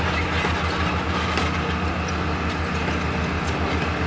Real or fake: real